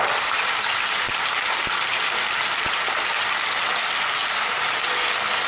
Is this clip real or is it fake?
real